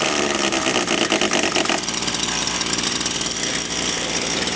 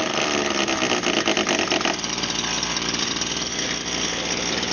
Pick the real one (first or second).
second